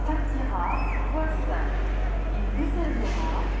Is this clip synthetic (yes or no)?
no